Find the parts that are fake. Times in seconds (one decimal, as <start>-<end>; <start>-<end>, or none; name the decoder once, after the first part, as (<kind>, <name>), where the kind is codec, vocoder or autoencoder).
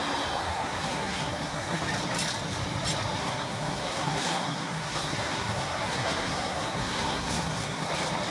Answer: 0.4-1.8 (codec, SNAC); 3.2-7.9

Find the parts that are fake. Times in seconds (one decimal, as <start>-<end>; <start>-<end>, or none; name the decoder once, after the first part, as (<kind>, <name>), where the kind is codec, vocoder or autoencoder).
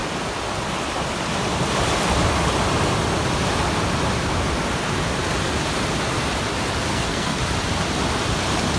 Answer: 6.9-7.4 (codec, SNAC)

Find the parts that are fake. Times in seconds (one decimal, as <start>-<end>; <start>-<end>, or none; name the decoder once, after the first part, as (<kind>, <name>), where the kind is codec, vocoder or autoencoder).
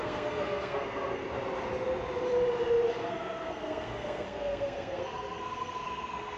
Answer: 0.0-1.2 (codec, SNAC); 2.9-6.4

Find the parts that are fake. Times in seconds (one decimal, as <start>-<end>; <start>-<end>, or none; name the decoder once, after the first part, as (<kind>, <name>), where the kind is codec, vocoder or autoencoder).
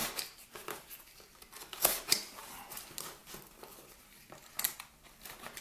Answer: none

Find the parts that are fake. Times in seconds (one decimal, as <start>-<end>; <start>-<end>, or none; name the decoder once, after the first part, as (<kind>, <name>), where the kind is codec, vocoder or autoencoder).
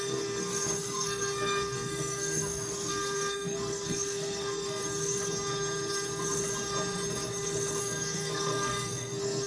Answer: 0.0-4.8 (codec, SNAC); 7.8-9.5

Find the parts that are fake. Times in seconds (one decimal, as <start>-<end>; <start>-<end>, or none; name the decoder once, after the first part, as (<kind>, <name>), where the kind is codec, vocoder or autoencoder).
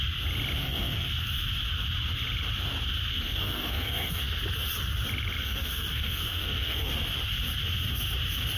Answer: 0.6-1.1 (codec, SNAC); 3.1-4.4; 5.4-6.9